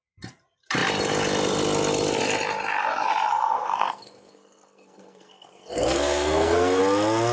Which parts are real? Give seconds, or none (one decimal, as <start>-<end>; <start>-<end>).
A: 0.0-3.3; 6.8-7.3